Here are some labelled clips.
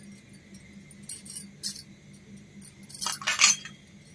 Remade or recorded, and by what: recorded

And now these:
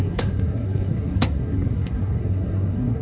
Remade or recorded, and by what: remade, codec, SNAC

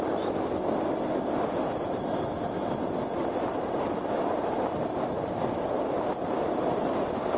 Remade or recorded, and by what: recorded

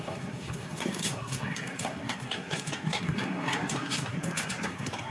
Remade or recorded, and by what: remade, codec, SNAC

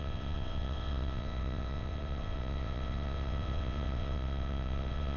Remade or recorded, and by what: remade, vocoder, WaveNeXt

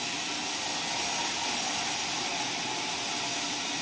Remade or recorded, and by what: recorded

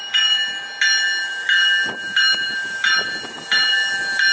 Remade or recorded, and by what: recorded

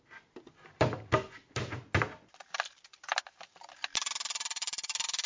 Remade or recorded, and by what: recorded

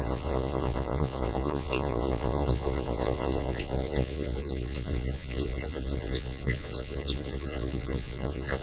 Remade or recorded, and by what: remade, vocoder, Vocos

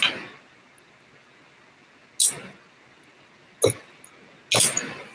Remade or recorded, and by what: recorded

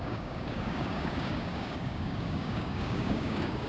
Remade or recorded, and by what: remade, codec, DAC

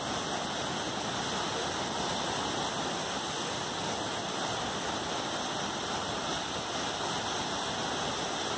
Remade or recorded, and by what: recorded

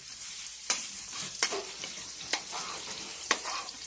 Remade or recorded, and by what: remade, vocoder, BigVGAN v2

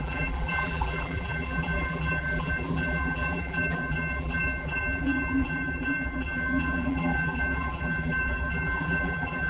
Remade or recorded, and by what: remade, vocoder, BigVGAN v2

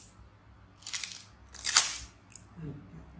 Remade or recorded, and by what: recorded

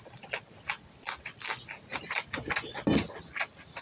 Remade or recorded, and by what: recorded